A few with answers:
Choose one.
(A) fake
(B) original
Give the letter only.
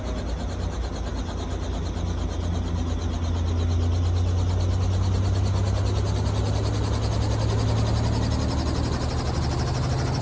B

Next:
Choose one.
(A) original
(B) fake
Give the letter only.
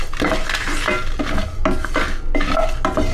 A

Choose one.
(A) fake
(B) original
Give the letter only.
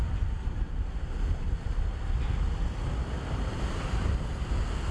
B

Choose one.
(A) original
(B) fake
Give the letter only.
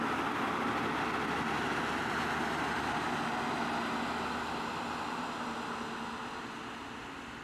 A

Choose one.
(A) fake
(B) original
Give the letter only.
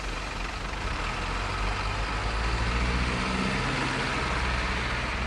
B